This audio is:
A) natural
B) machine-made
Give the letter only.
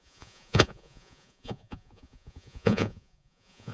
B